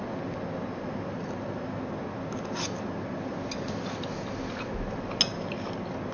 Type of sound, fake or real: real